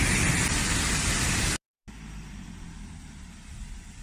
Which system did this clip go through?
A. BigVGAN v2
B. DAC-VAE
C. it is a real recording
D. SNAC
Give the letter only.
C